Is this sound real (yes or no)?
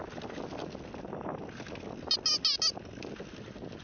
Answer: yes